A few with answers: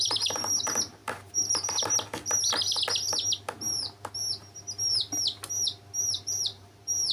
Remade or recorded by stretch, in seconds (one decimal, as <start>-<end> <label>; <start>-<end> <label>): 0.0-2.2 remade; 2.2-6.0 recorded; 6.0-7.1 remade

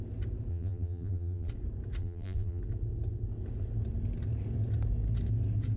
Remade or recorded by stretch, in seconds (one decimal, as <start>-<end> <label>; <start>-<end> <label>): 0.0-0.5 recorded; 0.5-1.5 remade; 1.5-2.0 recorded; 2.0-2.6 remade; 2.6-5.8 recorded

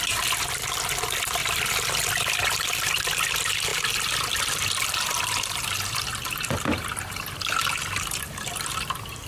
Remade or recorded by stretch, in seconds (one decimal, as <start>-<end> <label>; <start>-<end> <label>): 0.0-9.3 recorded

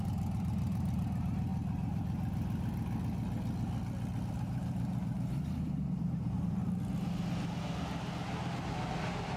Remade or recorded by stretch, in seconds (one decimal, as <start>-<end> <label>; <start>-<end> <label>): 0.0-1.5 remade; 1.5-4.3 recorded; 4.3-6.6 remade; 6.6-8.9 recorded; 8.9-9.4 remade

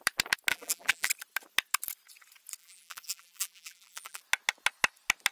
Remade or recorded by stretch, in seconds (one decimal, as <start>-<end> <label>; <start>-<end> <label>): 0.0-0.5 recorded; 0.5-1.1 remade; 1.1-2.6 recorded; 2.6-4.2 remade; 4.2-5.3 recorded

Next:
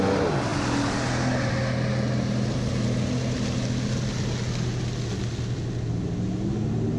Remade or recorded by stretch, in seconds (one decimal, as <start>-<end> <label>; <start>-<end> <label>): 0.0-7.0 recorded

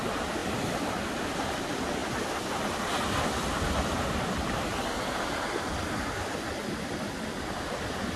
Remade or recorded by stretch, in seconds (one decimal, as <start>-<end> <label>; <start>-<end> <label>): 0.0-8.2 recorded

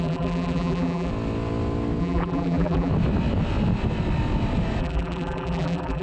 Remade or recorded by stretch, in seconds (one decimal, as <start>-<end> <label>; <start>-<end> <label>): 0.0-1.1 remade; 1.1-2.0 recorded; 2.0-2.9 remade; 2.9-4.8 recorded; 4.8-6.0 remade